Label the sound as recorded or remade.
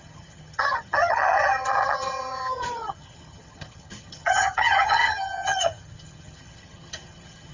remade